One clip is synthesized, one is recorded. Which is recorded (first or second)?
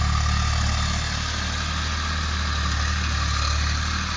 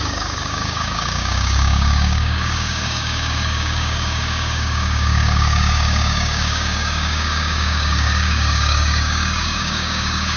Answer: first